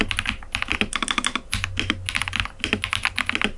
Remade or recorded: recorded